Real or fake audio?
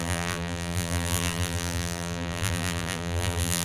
fake